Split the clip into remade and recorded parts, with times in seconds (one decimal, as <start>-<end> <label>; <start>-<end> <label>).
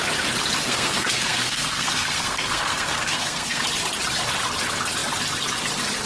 0.0-0.6 recorded; 0.6-3.6 remade; 3.6-6.1 recorded